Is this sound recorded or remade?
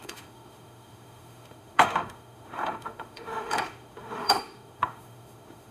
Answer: remade